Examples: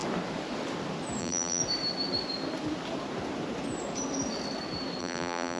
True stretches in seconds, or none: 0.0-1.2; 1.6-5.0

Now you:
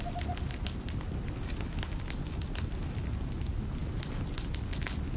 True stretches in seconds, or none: 0.0-5.2

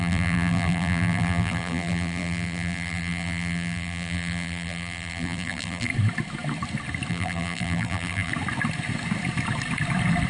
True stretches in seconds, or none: 5.9-7.1; 8.3-10.3